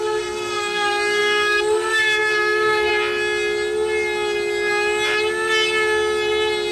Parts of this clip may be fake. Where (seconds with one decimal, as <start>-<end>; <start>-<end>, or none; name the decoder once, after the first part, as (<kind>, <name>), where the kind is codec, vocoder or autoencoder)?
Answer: 0.0-2.9 (codec, SNAC)